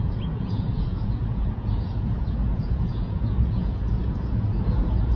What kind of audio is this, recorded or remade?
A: remade